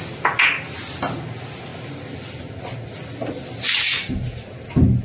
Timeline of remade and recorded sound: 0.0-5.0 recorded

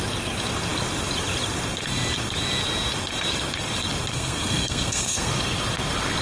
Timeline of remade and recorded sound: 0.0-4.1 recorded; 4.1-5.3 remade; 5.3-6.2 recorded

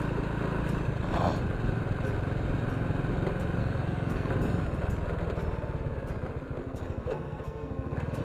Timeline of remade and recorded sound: 0.0-3.6 recorded; 3.6-4.3 remade; 4.3-6.6 recorded; 6.6-8.2 remade

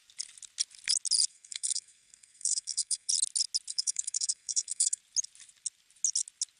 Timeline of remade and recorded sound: 0.0-1.3 recorded; 1.3-3.1 remade; 3.1-3.7 recorded; 3.7-5.0 remade; 5.0-6.6 recorded